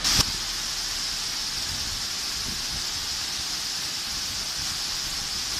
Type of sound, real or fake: real